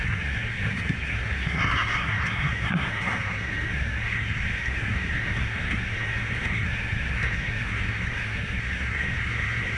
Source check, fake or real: fake